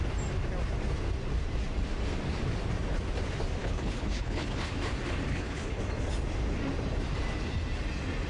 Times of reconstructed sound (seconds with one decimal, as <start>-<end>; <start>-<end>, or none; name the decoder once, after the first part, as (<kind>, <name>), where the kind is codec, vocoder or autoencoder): 3.6-4.7 (codec, HILCodec); 5.3-5.8